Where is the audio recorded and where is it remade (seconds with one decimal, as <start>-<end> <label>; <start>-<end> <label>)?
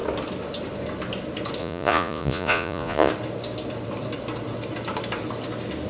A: 0.0-1.6 recorded; 1.6-3.1 remade; 3.1-5.9 recorded